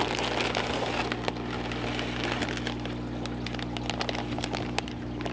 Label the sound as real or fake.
real